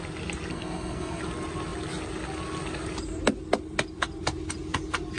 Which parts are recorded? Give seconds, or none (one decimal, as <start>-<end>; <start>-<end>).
0.0-0.5; 1.2-5.2